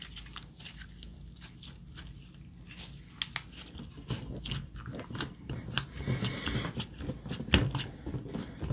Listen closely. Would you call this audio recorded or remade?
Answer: recorded